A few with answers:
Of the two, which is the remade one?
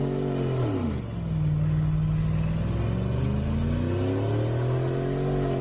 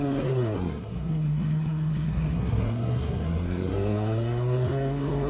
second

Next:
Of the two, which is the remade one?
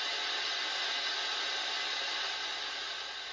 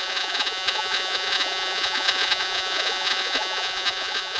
second